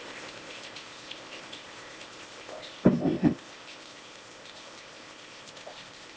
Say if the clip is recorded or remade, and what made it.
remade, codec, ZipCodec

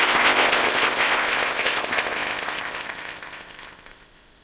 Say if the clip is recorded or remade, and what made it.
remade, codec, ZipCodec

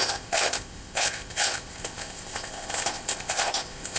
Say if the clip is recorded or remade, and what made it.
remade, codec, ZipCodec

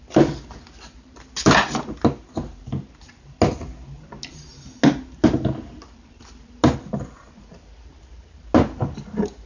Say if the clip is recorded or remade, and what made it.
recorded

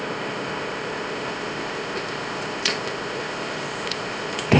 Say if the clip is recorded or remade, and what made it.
remade, codec, ZipCodec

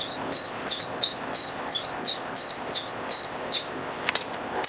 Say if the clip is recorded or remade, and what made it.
remade, codec, ZipCodec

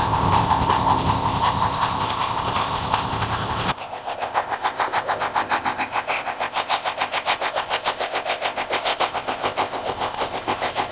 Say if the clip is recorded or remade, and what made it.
remade, codec, ZipCodec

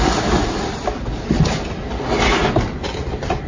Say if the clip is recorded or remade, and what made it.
recorded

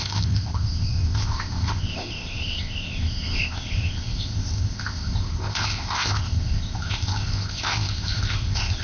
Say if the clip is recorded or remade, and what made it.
remade, codec, ZipCodec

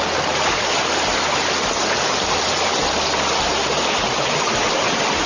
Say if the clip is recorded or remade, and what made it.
recorded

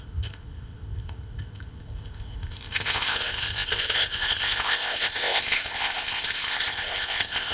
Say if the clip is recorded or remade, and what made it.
remade, codec, ZipCodec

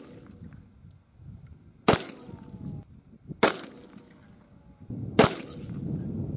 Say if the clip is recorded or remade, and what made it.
recorded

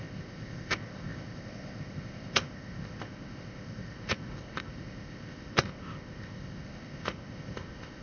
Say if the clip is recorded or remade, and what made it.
remade, codec, ZipCodec